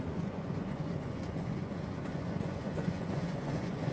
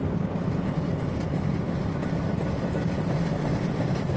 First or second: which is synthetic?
first